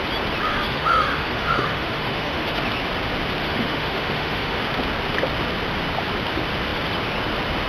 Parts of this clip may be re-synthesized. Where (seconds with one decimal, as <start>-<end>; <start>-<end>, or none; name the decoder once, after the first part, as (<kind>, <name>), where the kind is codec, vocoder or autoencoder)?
0.5-2.6 (autoencoder, DAC-VAE); 3.4-4.6